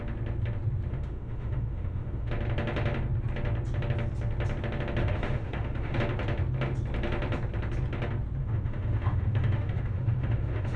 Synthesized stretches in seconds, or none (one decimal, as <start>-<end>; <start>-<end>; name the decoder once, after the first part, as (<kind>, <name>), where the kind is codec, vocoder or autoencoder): 0.9-2.3 (autoencoder, DAC-VAE); 5.0-6.0; 8.4-10.8